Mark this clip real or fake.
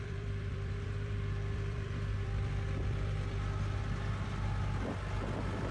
fake